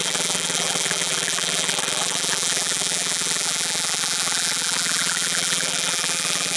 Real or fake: fake